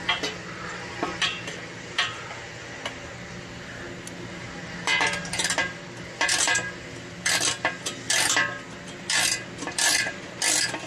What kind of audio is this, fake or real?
real